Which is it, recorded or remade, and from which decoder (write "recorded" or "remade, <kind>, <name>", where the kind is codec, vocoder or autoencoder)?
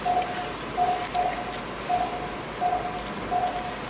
recorded